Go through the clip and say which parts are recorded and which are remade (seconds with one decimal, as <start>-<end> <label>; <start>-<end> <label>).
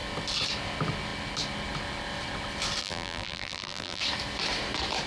0.0-2.8 recorded; 2.8-4.0 remade; 4.0-5.1 recorded